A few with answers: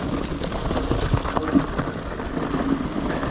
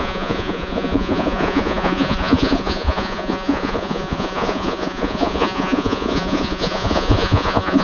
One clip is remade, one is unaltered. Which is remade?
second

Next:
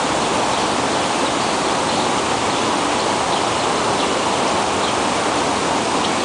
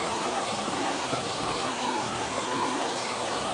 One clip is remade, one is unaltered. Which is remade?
second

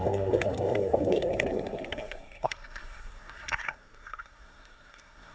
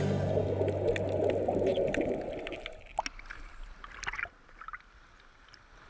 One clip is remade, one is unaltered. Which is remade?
first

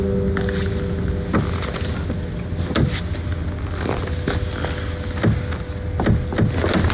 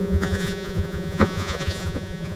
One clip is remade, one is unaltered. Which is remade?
second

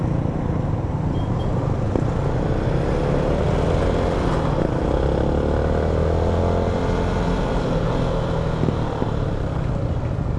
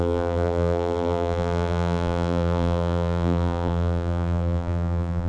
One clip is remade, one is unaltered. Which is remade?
second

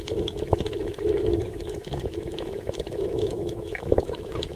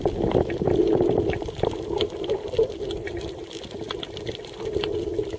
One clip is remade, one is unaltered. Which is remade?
first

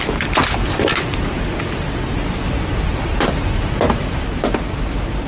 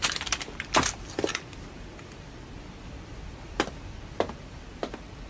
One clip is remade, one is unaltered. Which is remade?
second